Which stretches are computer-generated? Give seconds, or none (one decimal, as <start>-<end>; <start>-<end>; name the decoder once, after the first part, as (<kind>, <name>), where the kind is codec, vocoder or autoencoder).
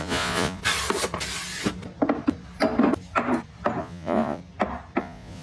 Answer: 0.0-0.6 (vocoder, Vocos); 3.8-4.4; 5.0-5.4